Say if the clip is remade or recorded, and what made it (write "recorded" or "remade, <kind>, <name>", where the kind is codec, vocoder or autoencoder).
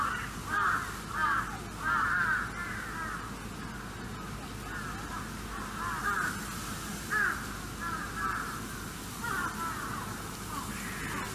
recorded